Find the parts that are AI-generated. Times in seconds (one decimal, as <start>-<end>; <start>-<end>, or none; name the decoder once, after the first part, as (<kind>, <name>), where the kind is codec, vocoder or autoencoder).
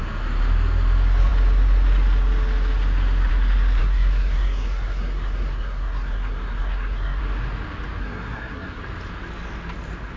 3.8-7.2 (codec, SNAC); 8.0-8.8